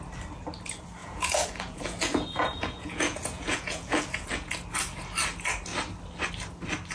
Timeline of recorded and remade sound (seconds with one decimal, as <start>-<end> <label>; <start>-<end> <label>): 0.0-1.0 recorded; 1.0-4.5 remade; 4.5-6.9 recorded